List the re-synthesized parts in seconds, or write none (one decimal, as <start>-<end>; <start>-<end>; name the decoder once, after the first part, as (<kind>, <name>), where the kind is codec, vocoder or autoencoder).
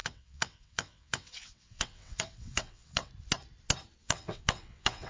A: 0.0-3.1 (vocoder, WaveNeXt); 4.0-5.1